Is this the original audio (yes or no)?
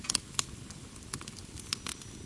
yes